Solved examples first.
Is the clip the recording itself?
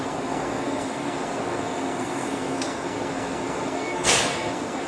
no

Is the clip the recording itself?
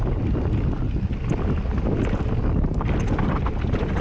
yes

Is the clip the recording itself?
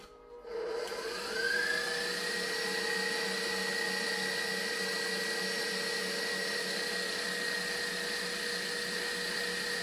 yes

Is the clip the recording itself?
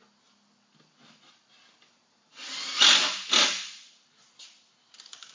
yes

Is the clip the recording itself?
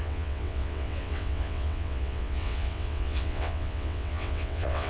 no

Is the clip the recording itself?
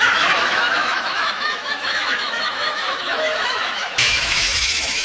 no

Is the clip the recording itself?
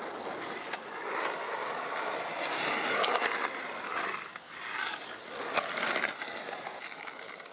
yes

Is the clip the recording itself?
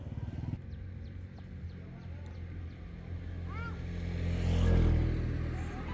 yes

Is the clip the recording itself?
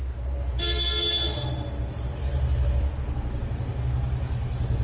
yes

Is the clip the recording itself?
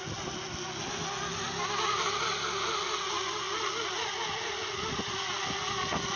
yes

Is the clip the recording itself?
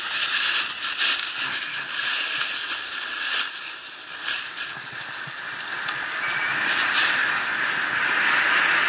yes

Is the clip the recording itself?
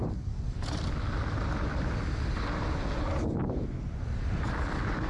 yes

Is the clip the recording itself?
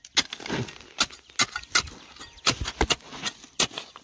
yes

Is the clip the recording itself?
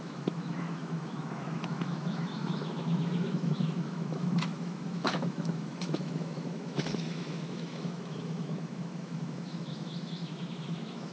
no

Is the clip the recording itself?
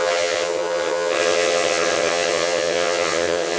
no